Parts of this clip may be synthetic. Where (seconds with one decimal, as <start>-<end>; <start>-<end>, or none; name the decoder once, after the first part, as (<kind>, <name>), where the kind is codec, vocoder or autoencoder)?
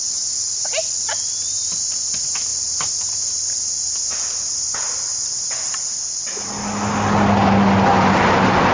none